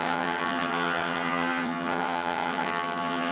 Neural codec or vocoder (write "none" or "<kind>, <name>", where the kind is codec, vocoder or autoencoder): vocoder, HiFi-GAN